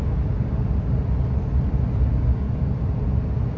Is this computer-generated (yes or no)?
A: no